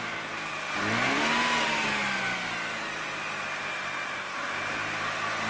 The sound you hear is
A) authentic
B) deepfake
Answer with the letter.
A